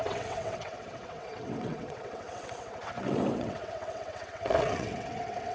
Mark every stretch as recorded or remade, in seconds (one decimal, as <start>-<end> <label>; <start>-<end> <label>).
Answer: 0.0-5.5 remade